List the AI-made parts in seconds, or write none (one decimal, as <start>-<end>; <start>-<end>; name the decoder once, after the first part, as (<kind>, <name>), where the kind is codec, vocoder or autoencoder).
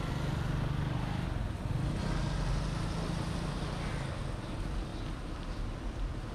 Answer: none